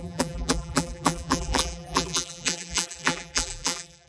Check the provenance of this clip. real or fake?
fake